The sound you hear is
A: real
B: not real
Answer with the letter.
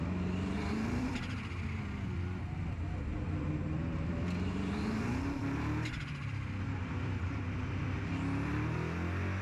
A